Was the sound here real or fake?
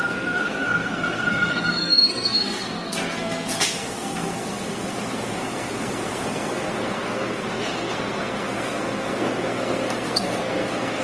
fake